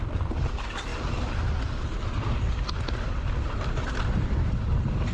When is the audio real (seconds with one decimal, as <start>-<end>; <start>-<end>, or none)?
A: none